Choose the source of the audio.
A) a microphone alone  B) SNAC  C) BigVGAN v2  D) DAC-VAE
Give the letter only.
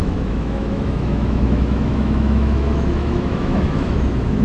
D